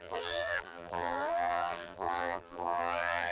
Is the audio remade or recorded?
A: remade